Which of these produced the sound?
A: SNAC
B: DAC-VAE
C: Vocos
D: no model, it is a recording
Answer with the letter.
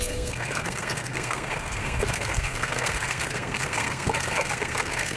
A